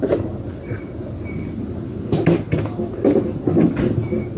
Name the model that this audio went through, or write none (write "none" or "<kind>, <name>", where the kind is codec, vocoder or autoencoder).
none